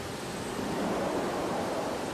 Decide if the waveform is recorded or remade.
remade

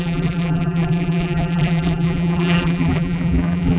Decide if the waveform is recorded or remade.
remade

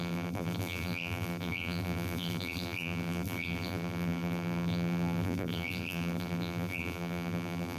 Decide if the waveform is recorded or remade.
remade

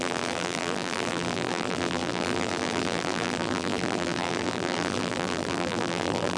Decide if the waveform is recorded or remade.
remade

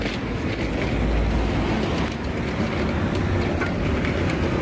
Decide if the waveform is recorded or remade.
recorded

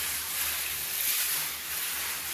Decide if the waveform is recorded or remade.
recorded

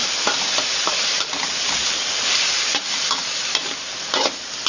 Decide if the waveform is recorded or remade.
remade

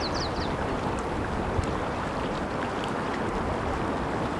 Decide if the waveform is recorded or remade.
recorded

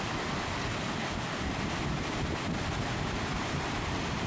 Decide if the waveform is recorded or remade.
remade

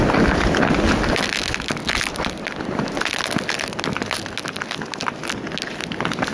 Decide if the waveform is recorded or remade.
recorded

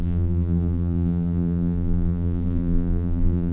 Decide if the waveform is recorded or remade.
remade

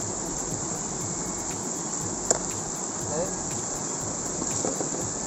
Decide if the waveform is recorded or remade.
recorded